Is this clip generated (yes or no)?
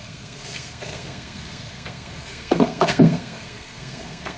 yes